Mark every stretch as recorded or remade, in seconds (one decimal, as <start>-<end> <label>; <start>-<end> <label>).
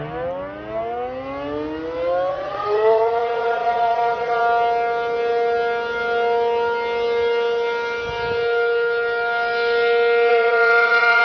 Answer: 0.0-2.3 recorded; 2.3-4.4 remade; 4.4-10.3 recorded; 10.3-11.2 remade